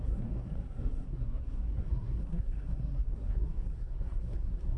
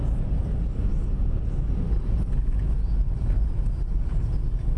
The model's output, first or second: first